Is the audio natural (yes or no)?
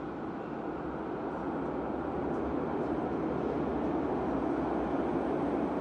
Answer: yes